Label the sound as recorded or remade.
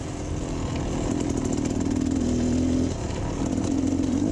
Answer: recorded